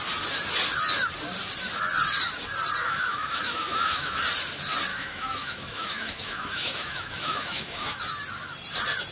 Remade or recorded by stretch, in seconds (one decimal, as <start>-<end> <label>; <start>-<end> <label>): 0.0-2.8 recorded; 2.8-4.2 remade; 4.2-4.9 recorded; 4.9-8.0 remade; 8.0-9.1 recorded